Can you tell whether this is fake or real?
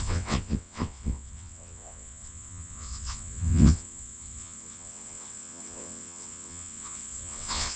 fake